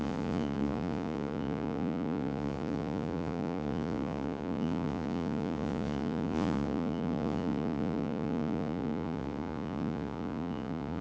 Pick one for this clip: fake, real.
fake